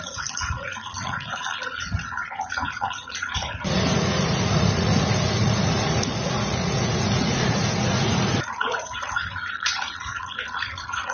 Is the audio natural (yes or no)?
no